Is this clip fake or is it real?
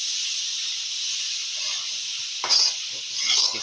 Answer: real